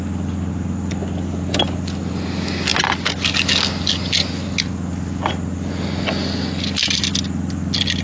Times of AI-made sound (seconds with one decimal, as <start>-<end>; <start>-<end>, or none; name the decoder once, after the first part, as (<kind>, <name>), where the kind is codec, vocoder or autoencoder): none